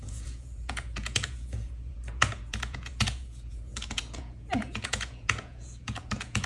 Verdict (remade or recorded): remade